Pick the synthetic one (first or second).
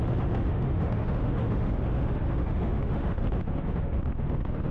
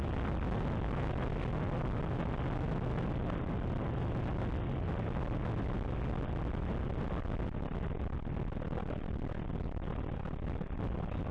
first